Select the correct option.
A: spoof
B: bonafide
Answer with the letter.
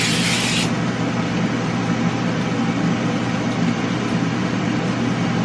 B